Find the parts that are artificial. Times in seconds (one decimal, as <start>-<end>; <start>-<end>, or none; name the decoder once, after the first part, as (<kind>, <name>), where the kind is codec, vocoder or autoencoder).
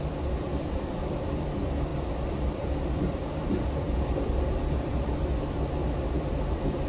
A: 0.0-1.9 (vocoder, BigVGAN v2); 2.4-6.9